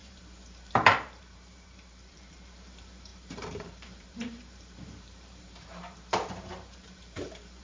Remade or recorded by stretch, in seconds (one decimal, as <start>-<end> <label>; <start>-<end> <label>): 0.0-7.6 remade